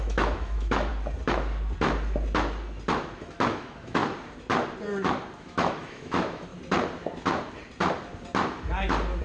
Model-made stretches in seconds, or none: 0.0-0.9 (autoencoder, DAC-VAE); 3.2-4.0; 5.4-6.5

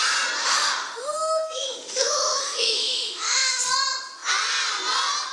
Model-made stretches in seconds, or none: 0.4-3.6 (autoencoder, DAC-VAE)